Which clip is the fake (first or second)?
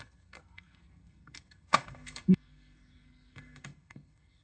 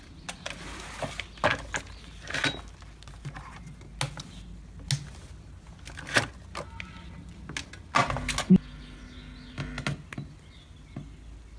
first